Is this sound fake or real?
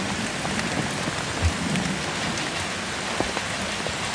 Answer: real